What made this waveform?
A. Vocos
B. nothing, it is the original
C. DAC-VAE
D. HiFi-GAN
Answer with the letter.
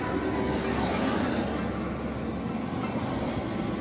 B